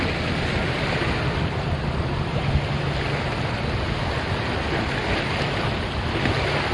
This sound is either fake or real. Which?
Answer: real